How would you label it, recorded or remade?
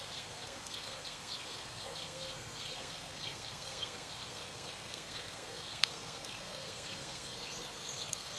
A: remade